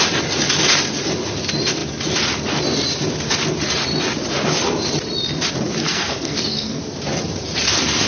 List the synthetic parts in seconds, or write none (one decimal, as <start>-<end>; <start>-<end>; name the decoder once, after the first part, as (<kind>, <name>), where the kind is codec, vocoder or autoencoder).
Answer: 5.8-6.8 (codec, SNAC)